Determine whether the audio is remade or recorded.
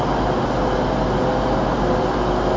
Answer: recorded